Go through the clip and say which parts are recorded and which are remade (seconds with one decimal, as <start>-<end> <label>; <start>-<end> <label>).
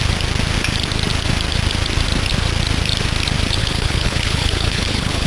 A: 0.0-3.6 recorded; 3.6-5.3 remade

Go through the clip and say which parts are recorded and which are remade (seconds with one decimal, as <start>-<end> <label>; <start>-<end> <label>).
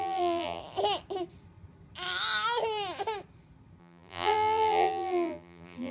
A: 0.0-0.6 remade; 0.6-3.8 recorded; 3.8-5.9 remade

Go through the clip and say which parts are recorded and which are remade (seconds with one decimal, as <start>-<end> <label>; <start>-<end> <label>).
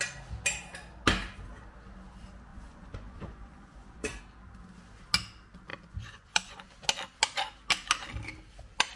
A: 0.0-2.5 recorded; 2.5-4.2 remade; 4.2-5.7 recorded; 5.7-6.6 remade; 6.6-9.0 recorded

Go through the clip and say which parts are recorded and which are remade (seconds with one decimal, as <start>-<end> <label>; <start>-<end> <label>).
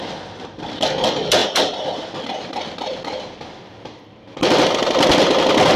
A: 0.0-1.4 recorded; 1.4-4.3 remade; 4.3-5.8 recorded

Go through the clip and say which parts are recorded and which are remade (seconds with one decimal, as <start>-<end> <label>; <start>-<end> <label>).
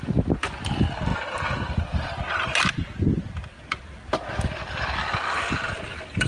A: 0.0-6.3 recorded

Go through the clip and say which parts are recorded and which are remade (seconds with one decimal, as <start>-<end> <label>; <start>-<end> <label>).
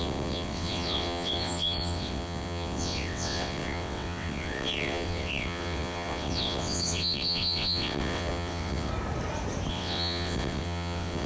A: 0.0-8.9 remade; 8.9-9.7 recorded; 9.7-11.3 remade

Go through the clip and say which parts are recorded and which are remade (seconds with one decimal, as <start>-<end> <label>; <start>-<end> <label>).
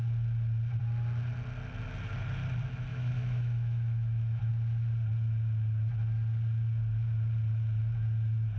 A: 0.0-2.9 recorded; 2.9-4.5 remade; 4.5-8.6 recorded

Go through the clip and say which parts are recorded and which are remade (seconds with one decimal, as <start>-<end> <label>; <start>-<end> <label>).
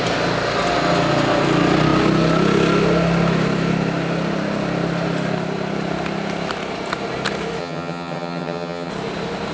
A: 0.0-7.6 recorded; 7.6-8.9 remade; 8.9-9.5 recorded